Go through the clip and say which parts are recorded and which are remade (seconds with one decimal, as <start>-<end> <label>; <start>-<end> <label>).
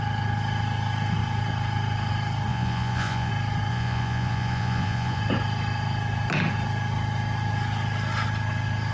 0.0-2.5 recorded; 2.5-3.3 remade; 3.3-3.7 recorded; 3.7-5.2 remade; 5.2-8.9 recorded